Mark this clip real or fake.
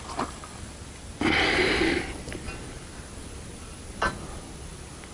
real